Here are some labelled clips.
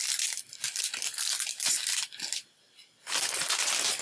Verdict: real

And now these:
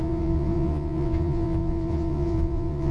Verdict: fake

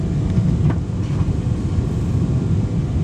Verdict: real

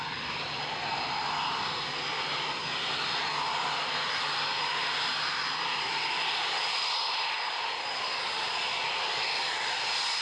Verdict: real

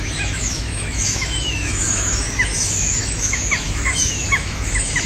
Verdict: fake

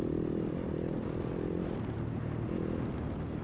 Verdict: real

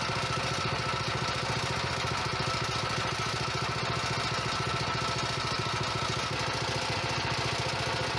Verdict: real